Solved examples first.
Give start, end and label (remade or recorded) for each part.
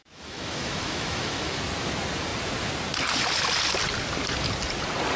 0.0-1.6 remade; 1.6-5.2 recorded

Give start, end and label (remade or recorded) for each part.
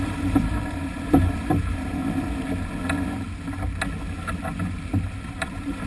0.0-2.0 remade; 2.0-5.2 recorded; 5.2-5.9 remade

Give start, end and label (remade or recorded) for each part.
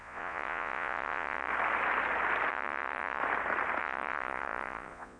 0.0-1.5 remade; 1.5-2.5 recorded; 2.5-3.2 remade; 3.2-3.8 recorded; 3.8-5.2 remade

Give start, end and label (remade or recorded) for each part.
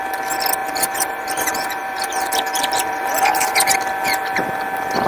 0.0-0.6 recorded; 0.6-3.7 remade; 3.7-5.1 recorded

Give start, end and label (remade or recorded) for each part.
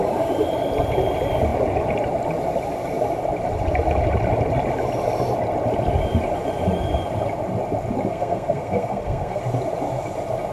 0.0-8.1 recorded; 8.1-9.4 remade; 9.4-10.5 recorded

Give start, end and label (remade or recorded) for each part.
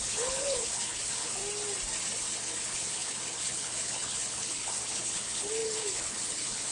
0.0-1.4 remade; 1.4-2.6 recorded; 2.6-6.7 remade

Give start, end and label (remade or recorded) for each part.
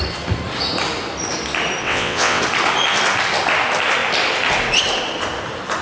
0.0-1.8 recorded; 1.8-2.4 remade; 2.4-5.8 recorded